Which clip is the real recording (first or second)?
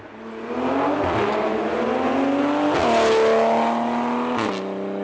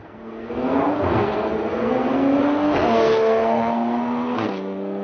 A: first